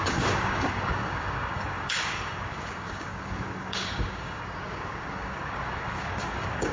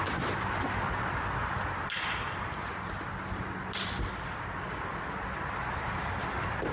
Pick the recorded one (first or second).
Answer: second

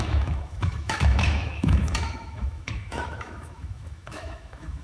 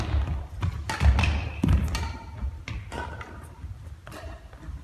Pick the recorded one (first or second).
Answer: second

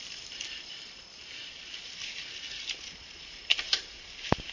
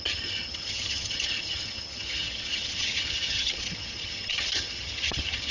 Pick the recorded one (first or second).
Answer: first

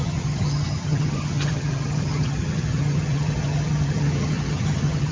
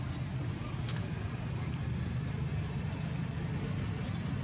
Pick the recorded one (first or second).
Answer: second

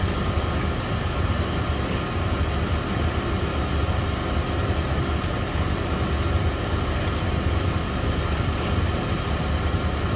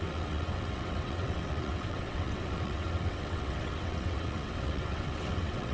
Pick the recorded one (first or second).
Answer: first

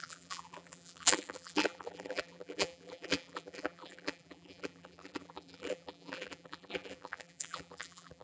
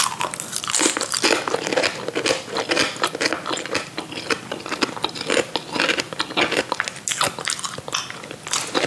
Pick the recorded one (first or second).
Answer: second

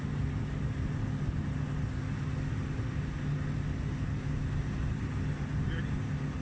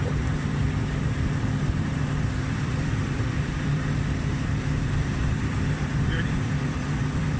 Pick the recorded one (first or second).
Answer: first